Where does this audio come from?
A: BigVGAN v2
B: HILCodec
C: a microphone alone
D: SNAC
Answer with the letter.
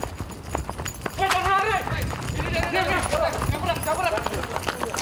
C